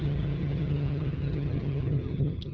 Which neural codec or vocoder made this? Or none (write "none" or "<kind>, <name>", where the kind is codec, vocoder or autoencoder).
vocoder, HiFi-GAN